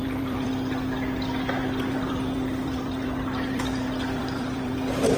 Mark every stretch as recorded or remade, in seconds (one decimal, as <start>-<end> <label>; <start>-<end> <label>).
0.0-0.5 remade; 0.5-1.6 recorded; 1.6-4.7 remade; 4.7-5.2 recorded